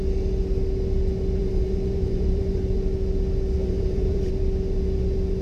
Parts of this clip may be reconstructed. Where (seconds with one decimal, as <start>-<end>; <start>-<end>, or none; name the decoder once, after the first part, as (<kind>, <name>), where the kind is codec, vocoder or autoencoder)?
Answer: 1.4-2.6 (vocoder, BigVGAN v2); 3.6-4.3